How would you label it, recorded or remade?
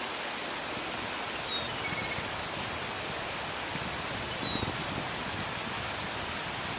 recorded